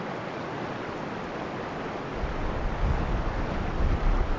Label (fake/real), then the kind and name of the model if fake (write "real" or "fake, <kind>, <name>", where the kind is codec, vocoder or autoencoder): real